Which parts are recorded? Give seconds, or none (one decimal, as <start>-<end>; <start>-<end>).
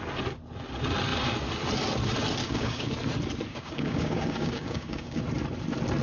0.0-2.4; 2.9-3.5; 5.2-6.0